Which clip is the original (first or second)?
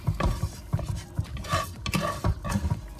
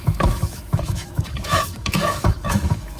first